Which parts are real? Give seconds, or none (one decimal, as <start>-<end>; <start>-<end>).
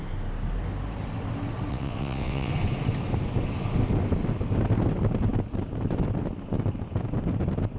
0.0-1.7; 2.5-7.8